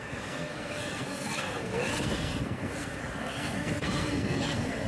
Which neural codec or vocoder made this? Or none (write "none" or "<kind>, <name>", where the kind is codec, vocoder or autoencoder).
codec, SNAC